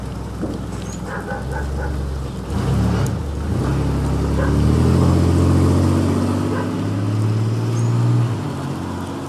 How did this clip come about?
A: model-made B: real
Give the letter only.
B